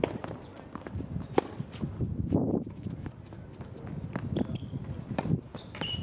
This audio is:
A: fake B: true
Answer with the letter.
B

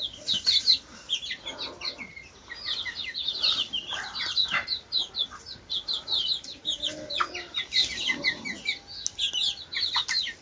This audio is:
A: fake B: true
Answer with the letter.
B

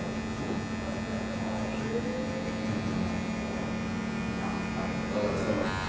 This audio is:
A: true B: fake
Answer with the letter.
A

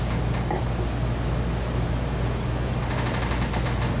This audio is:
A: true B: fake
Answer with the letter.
A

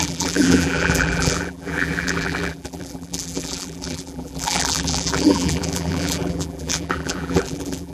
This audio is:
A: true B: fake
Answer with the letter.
B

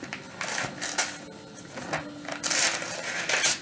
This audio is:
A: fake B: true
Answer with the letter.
B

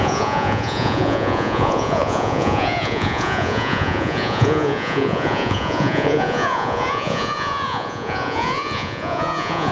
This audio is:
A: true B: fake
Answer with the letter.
B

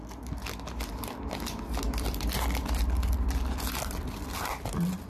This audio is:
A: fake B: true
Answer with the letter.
B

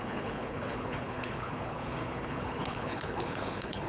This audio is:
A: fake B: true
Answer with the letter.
A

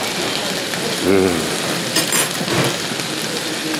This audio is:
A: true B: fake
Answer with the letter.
A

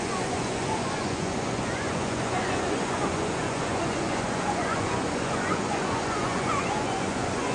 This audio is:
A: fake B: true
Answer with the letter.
A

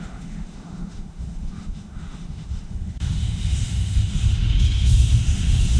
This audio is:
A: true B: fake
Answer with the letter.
B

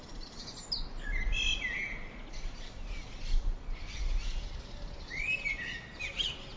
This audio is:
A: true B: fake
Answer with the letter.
A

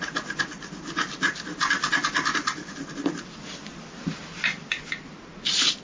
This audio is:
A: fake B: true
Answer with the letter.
B